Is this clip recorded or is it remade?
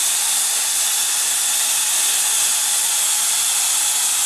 recorded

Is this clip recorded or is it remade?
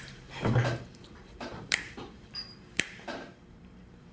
remade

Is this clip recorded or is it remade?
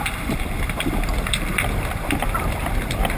remade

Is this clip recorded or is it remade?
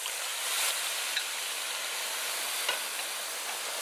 recorded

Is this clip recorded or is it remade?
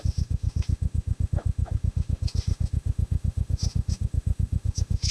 remade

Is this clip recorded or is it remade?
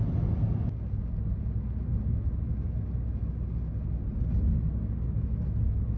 recorded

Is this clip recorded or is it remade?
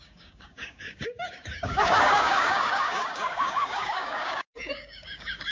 remade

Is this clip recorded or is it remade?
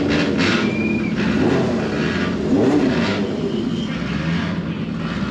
recorded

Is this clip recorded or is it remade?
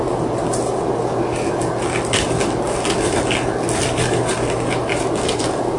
recorded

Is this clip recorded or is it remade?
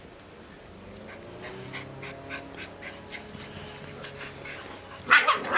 recorded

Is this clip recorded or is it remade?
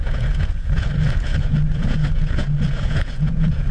remade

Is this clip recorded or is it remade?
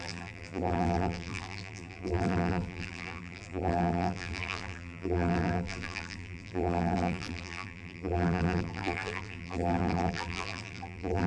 remade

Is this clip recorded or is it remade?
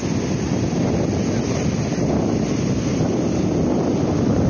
recorded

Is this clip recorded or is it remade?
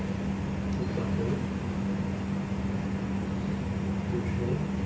recorded